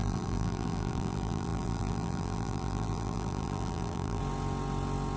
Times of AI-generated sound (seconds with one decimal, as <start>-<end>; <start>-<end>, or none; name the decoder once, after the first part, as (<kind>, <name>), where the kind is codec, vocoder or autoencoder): 0.0-4.2 (vocoder, BigVGAN v2)